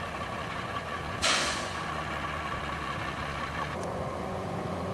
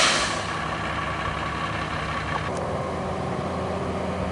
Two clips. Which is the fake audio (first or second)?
first